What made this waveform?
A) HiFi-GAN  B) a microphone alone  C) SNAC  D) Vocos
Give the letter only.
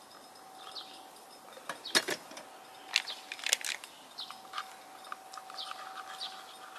B